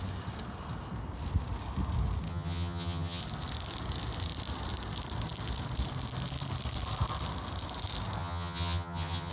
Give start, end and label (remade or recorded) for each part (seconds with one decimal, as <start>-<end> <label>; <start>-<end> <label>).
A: 0.0-2.3 recorded; 2.3-3.2 remade; 3.2-8.2 recorded; 8.2-9.3 remade